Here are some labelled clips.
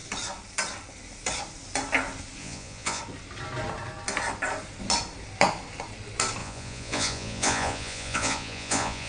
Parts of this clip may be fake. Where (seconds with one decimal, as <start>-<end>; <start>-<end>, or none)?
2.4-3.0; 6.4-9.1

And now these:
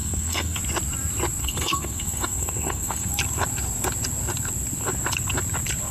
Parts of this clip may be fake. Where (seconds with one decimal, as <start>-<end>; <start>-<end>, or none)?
0.0-0.6; 1.4-3.1

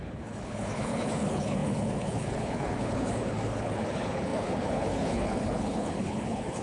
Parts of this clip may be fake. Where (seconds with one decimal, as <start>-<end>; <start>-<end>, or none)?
0.0-6.6

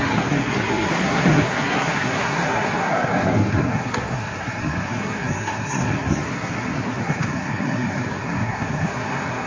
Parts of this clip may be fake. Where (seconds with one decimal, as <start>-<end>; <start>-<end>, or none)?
0.0-9.5

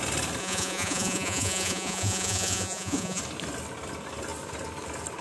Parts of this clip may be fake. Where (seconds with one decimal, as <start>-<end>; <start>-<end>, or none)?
0.4-3.2

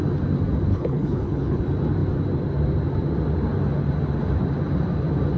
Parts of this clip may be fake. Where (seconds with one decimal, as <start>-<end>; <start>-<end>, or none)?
0.7-1.6